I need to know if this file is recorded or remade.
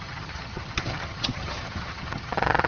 remade